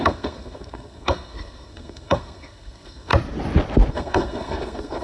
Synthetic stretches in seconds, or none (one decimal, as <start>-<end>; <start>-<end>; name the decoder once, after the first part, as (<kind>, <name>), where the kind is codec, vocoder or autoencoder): 0.0-3.1 (codec, SNAC); 3.9-5.0

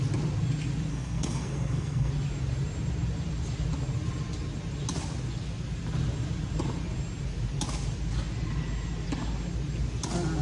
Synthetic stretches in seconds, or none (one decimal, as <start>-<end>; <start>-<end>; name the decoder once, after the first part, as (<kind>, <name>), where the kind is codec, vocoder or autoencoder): 0.9-2.1 (codec, SNAC)